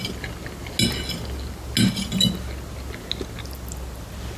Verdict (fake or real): real